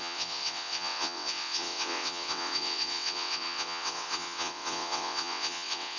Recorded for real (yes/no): no